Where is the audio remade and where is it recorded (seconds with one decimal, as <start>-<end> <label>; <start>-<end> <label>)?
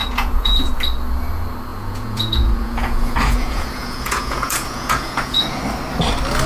0.0-0.7 remade; 0.7-1.7 recorded; 1.7-5.6 remade; 5.6-6.5 recorded